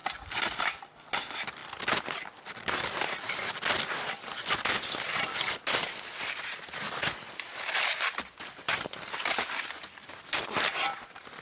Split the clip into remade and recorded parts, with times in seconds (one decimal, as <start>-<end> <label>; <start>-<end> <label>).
0.0-11.4 recorded